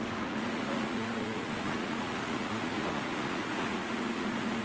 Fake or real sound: fake